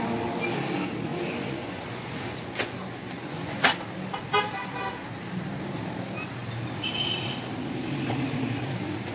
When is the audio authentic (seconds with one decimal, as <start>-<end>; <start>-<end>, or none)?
0.0-1.1; 3.6-9.1

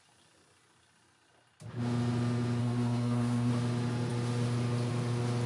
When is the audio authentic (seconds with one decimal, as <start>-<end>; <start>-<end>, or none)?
0.0-2.6; 3.5-5.5

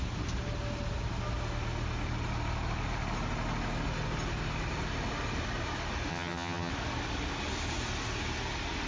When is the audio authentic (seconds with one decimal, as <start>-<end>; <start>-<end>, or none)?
0.0-6.1; 6.7-8.9

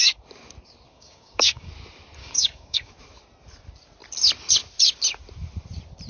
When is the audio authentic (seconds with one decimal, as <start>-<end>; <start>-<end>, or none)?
0.0-0.9; 1.7-2.2; 2.9-6.1

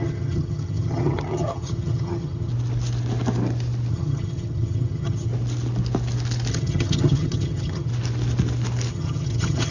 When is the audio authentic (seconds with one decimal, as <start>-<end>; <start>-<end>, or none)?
2.5-3.9; 5.3-6.5; 7.9-8.9

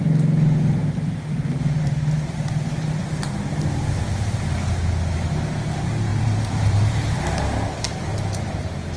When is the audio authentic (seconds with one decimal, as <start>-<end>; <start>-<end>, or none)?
0.0-6.1; 7.2-8.1

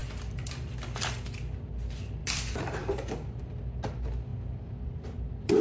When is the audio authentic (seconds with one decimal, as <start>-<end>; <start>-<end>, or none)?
0.0-2.2; 3.4-4.3

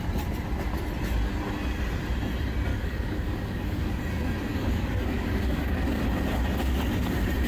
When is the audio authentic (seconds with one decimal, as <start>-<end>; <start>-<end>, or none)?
0.0-2.7; 4.0-4.5; 6.0-7.5